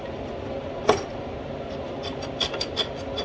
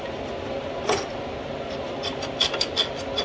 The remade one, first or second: first